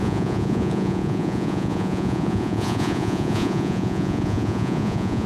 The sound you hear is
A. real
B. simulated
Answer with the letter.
B